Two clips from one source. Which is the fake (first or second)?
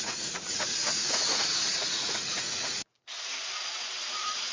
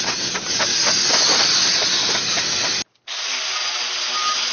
first